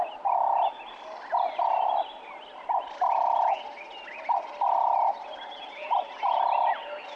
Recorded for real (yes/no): yes